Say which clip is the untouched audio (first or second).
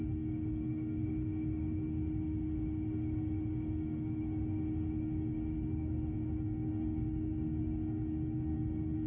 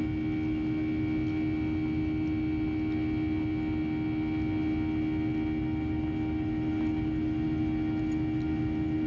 second